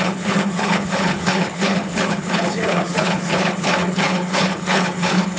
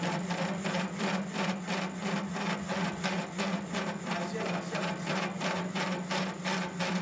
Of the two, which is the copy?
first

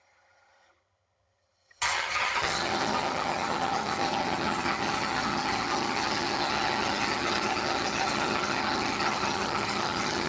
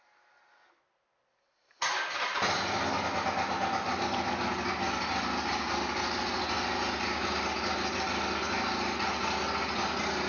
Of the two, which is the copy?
first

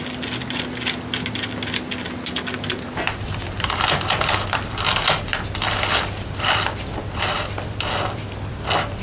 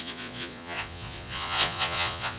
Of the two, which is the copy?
second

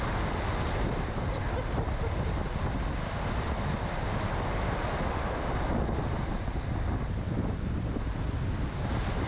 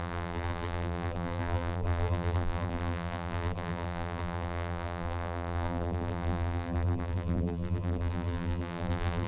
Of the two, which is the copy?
second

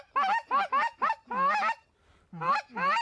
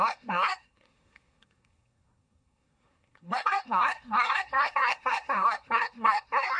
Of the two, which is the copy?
second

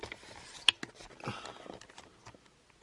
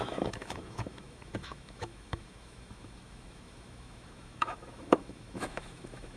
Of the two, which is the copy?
second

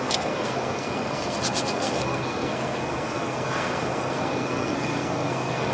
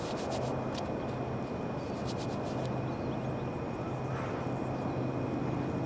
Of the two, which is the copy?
first